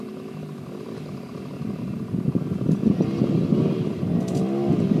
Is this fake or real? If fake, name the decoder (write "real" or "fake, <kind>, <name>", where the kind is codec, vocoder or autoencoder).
real